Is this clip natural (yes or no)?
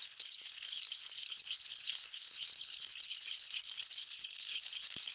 no